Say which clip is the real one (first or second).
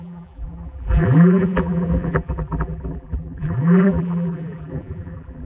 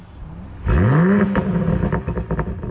second